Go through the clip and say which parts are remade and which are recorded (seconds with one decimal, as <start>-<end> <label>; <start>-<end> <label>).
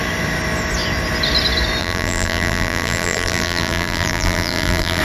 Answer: 0.0-1.8 recorded; 1.8-5.0 remade